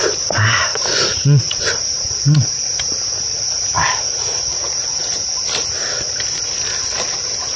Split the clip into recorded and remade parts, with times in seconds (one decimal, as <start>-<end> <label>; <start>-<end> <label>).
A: 0.0-0.7 recorded; 0.7-1.6 remade; 1.6-7.6 recorded